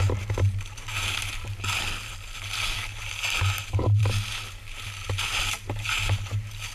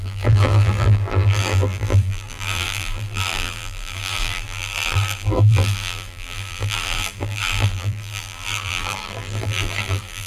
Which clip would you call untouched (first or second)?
first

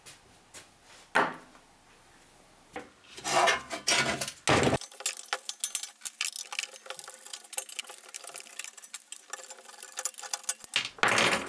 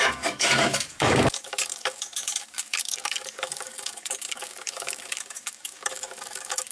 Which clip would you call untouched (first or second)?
first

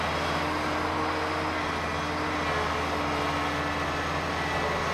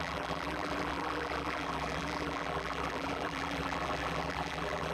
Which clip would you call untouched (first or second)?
first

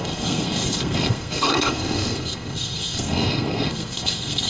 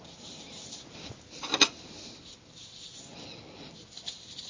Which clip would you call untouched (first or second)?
second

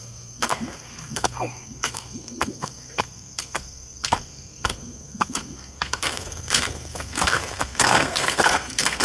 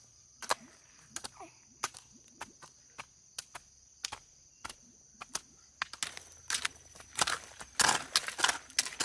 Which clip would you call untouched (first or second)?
second